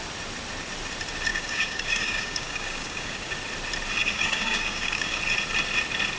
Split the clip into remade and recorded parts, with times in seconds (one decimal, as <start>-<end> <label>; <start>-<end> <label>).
0.0-1.3 recorded; 1.3-3.3 remade; 3.3-4.0 recorded; 4.0-5.2 remade; 5.2-6.2 recorded

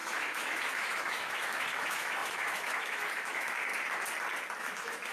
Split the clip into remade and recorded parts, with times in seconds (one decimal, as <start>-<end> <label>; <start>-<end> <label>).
0.0-3.7 remade; 3.7-4.6 recorded; 4.6-5.1 remade

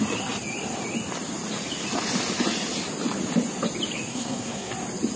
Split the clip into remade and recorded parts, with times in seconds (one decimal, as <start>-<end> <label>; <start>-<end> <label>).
0.0-4.1 recorded; 4.1-4.7 remade; 4.7-5.2 recorded

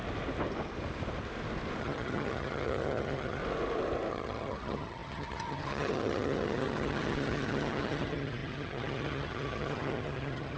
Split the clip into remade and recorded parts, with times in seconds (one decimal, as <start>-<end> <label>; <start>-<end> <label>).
0.0-1.8 recorded; 1.8-3.4 remade; 3.4-4.1 recorded; 4.1-10.6 remade

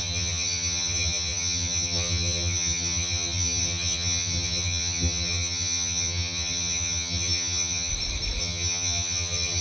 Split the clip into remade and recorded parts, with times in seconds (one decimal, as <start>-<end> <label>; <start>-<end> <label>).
0.0-7.9 remade; 7.9-8.4 recorded; 8.4-9.6 remade

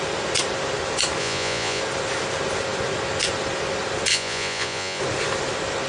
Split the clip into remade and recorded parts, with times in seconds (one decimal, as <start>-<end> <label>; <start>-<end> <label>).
0.0-1.2 recorded; 1.2-1.8 remade; 1.8-4.1 recorded; 4.1-5.0 remade; 5.0-5.9 recorded

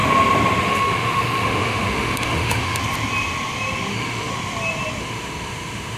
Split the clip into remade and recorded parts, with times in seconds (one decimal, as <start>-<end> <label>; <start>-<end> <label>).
0.0-0.6 recorded; 0.6-2.8 remade; 2.8-3.9 recorded; 3.9-4.3 remade; 4.3-5.0 recorded; 5.0-6.0 remade